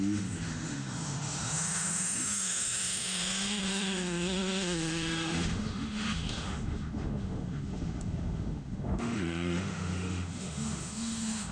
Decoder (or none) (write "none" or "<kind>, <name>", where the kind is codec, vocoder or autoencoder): autoencoder, DAC-VAE